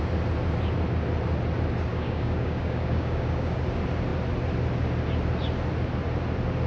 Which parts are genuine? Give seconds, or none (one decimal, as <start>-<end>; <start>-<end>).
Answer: 0.0-1.9; 3.6-6.7

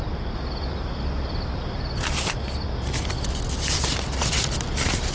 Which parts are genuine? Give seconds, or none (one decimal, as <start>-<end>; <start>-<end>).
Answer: 0.0-5.1

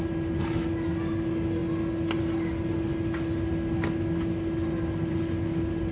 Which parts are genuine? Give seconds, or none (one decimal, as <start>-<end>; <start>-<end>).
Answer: 0.0-5.9

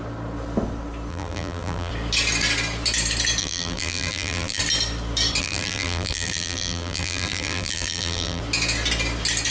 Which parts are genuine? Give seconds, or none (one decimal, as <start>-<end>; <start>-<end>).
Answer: 0.0-1.1; 1.9-3.4; 4.6-5.4; 8.4-9.5

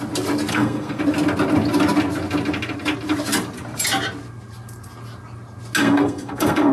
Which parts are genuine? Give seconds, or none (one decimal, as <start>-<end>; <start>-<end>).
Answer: 0.0-0.5; 1.0-5.8

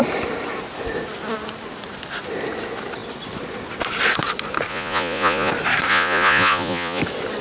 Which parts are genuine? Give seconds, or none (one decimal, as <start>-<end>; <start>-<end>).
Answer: 0.0-4.7; 5.5-5.9; 7.0-7.4

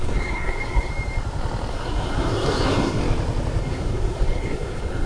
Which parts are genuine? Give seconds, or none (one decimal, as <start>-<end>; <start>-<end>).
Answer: 0.9-1.7; 3.0-3.6

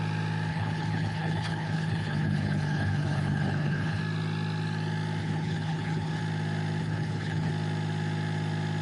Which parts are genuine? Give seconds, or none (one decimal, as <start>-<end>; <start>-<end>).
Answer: 0.0-0.5; 4.0-5.2; 6.2-6.8; 7.5-8.8